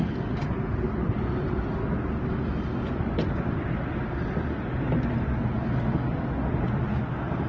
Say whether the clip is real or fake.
real